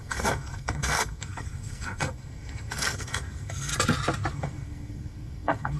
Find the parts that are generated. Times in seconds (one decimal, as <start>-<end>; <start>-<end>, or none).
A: 0.0-3.7; 4.3-5.8